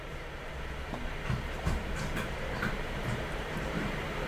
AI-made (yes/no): yes